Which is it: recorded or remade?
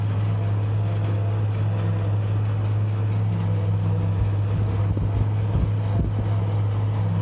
recorded